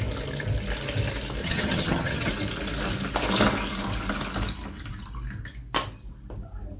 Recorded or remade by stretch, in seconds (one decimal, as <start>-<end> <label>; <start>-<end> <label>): 0.0-1.4 recorded; 1.4-2.3 remade; 2.3-6.8 recorded